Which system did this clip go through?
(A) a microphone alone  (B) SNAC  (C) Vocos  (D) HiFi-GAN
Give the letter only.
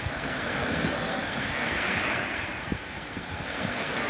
B